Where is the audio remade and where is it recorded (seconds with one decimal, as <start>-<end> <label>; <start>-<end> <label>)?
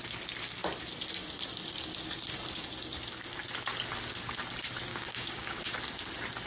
0.0-4.9 recorded; 4.9-5.6 remade; 5.6-6.5 recorded